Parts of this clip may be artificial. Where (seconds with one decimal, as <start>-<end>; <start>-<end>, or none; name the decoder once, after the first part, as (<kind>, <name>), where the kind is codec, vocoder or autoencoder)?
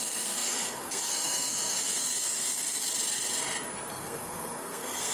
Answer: 0.0-2.8 (codec, SNAC); 3.9-5.1